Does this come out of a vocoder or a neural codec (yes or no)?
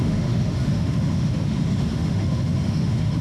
yes